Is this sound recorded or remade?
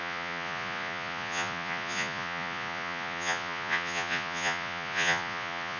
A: remade